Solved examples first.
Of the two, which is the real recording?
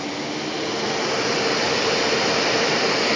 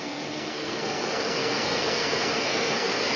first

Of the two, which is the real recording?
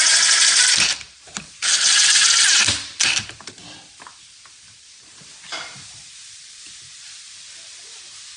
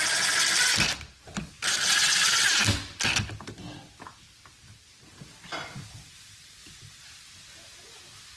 second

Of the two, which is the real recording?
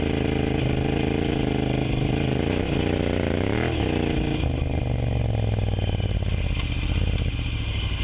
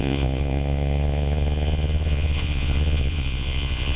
first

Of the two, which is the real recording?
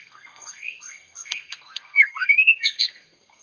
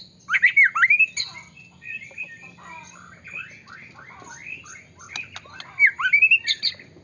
second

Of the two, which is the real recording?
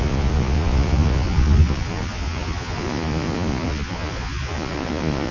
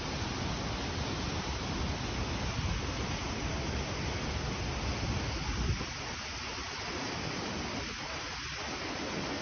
second